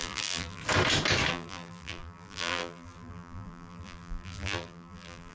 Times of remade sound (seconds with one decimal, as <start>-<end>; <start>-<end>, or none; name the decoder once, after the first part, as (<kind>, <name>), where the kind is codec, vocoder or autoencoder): 0.0-0.6 (vocoder, BigVGAN v2); 1.3-5.3